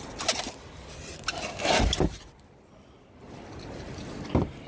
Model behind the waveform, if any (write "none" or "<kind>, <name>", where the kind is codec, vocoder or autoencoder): none